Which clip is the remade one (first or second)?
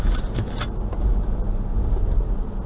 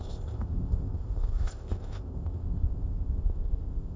second